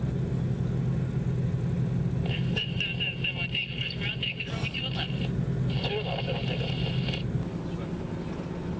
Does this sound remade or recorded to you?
recorded